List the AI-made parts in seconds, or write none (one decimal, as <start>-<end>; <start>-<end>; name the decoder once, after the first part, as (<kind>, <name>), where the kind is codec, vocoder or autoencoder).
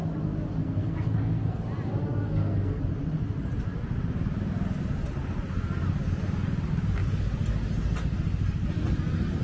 0.6-1.6 (codec, SNAC); 2.0-2.8